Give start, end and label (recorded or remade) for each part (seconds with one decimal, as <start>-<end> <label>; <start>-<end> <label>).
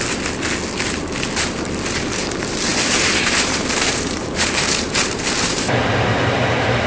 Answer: 0.0-2.7 recorded; 2.7-6.9 remade